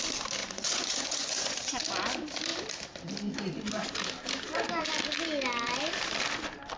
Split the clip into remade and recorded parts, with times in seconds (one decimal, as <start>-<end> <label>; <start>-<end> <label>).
0.0-0.4 recorded; 0.4-1.8 remade; 1.8-6.8 recorded